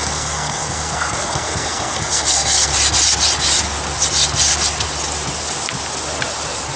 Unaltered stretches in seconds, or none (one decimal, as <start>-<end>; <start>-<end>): 2.7-6.8